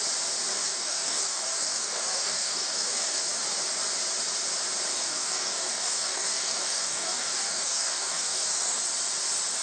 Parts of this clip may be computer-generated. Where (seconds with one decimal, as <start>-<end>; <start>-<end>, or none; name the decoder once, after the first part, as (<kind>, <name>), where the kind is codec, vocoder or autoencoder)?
0.5-3.2 (codec, DAC); 4.9-8.8